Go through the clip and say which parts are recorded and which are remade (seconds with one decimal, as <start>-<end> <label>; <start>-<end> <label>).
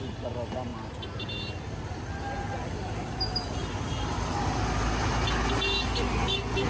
0.0-6.7 recorded